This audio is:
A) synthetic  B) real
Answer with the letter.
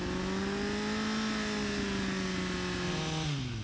B